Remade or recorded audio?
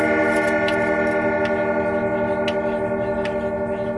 recorded